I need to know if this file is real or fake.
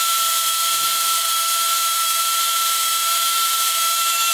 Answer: fake